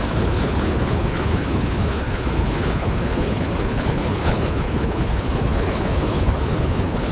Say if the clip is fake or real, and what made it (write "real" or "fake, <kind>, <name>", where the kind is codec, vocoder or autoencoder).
fake, codec, HILCodec